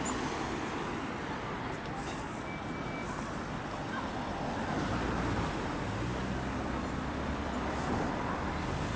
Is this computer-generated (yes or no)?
no